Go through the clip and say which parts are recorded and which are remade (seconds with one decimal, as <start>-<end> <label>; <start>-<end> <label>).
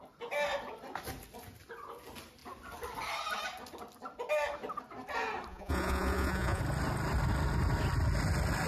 0.0-5.5 recorded; 5.5-6.6 remade; 6.6-8.7 recorded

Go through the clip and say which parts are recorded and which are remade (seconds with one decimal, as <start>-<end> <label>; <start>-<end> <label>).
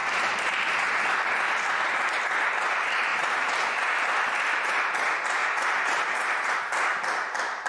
0.0-1.0 remade; 1.0-3.1 recorded; 3.1-3.9 remade; 3.9-5.4 recorded; 5.4-6.6 remade; 6.6-7.7 recorded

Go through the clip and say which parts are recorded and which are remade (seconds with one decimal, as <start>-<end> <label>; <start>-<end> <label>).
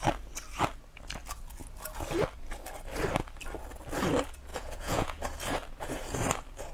0.0-4.5 recorded; 4.5-5.2 remade; 5.2-6.7 recorded